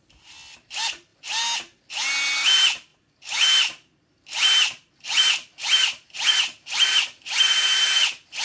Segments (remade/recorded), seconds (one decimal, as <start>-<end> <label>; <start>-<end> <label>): 0.0-8.4 recorded